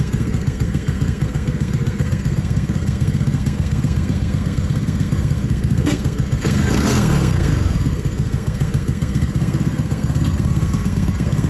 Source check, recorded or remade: remade